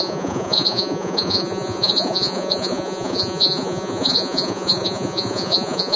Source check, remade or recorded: remade